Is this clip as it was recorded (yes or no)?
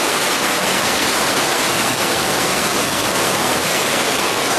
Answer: no